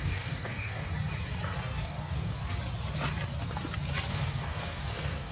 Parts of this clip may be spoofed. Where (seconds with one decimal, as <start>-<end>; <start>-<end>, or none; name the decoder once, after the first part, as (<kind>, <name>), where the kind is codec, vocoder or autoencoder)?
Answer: 0.0-0.9 (codec, DAC); 1.6-2.4; 4.1-5.3